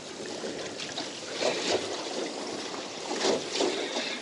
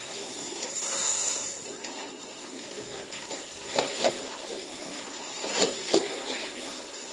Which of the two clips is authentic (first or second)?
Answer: first